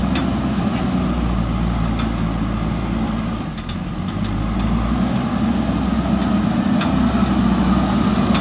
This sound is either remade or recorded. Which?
recorded